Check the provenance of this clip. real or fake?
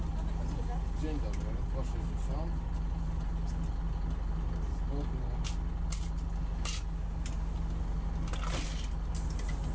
real